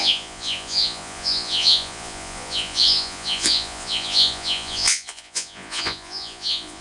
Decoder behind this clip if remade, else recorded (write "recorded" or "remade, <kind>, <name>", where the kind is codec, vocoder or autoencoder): remade, vocoder, Vocos